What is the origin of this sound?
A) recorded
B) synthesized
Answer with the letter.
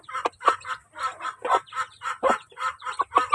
B